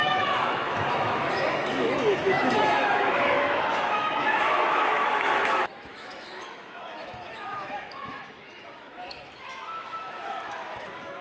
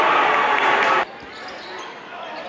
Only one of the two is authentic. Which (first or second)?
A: second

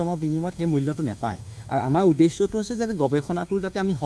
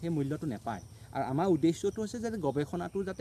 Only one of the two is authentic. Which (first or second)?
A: second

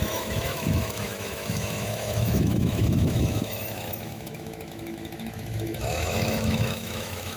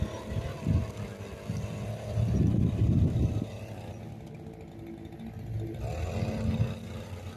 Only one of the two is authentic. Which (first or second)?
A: second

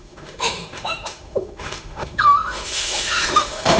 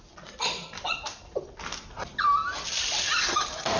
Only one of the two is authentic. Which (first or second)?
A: second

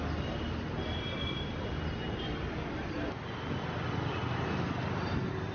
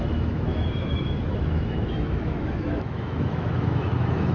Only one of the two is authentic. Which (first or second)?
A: first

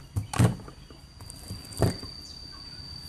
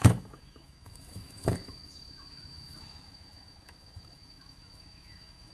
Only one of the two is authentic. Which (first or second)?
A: first